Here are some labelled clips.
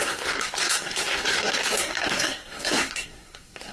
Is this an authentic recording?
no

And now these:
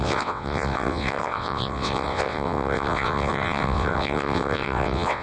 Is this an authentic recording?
no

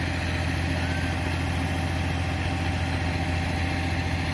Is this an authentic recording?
yes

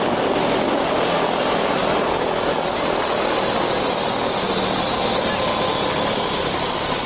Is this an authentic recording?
yes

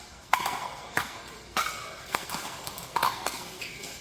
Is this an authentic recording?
no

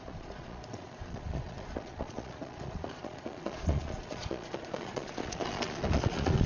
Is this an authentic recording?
no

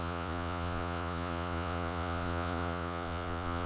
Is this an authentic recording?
no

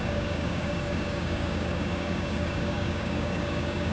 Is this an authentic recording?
no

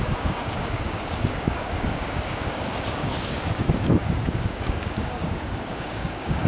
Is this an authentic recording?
no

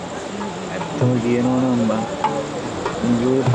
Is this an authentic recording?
yes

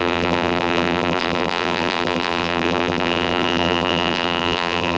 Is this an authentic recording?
no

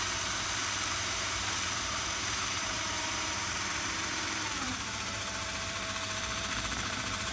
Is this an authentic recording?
no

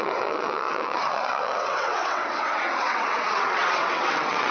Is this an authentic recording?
no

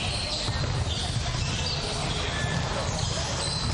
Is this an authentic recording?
yes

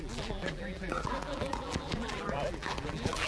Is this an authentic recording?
no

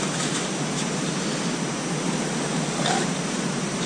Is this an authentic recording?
yes